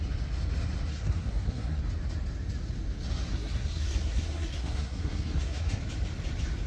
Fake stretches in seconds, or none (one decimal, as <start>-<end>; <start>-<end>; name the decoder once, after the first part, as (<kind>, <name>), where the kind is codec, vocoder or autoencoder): 0.9-1.8 (codec, SNAC); 3.3-5.8